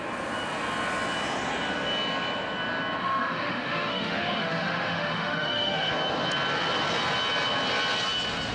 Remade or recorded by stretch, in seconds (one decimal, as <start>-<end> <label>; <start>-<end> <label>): 0.0-3.0 recorded; 3.0-5.9 remade; 5.9-8.5 recorded

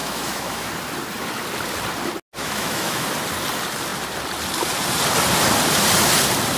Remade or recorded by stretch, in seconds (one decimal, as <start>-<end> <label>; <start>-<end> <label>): 0.0-0.7 remade; 0.7-2.4 recorded; 2.4-3.1 remade; 3.1-6.6 recorded

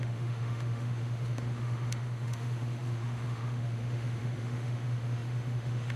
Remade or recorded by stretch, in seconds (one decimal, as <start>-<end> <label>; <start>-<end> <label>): 0.0-6.0 remade

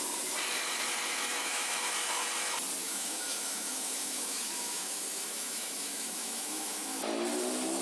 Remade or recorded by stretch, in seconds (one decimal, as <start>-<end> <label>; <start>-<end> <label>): 0.0-1.3 recorded; 1.3-1.9 remade; 1.9-2.8 recorded; 2.8-7.0 remade; 7.0-7.8 recorded